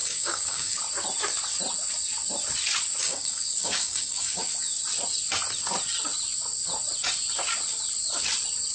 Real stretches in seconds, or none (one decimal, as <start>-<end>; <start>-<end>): 0.8-3.0; 4.5-8.7